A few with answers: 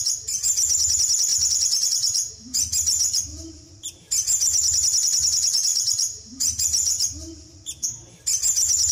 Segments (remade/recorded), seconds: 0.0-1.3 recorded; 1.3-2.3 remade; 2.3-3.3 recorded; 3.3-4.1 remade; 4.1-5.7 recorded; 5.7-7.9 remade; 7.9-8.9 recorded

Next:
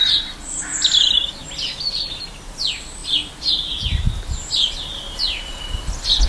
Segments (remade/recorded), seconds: 0.0-1.4 recorded; 1.4-2.5 remade; 2.5-6.3 recorded

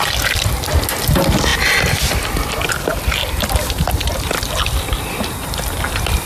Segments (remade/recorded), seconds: 0.0-6.2 recorded

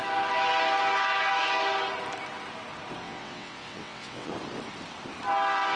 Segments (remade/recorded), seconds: 0.0-3.0 recorded; 3.0-4.3 remade; 4.3-5.8 recorded

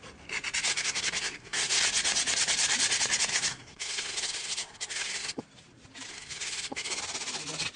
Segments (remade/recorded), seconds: 0.0-0.7 recorded; 0.7-1.8 remade; 1.8-3.3 recorded; 3.3-5.4 remade; 5.4-6.1 recorded; 6.1-7.0 remade; 7.0-7.8 recorded